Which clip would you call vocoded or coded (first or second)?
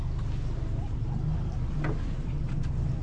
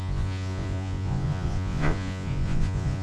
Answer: second